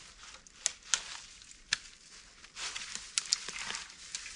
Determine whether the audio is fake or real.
real